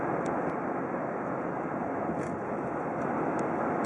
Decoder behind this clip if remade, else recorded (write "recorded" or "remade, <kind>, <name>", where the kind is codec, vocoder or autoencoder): recorded